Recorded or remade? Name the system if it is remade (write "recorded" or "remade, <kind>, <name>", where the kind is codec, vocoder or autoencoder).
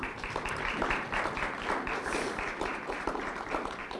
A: remade, vocoder, BigVGAN v2